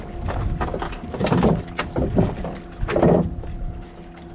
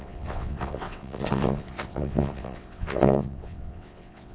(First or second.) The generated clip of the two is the second